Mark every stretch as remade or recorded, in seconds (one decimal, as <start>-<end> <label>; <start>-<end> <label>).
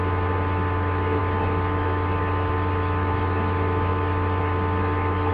0.0-5.3 recorded